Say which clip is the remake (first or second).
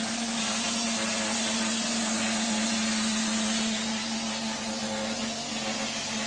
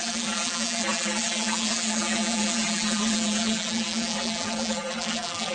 second